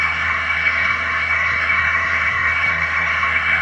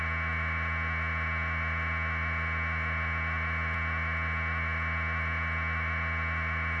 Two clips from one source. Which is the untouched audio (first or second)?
second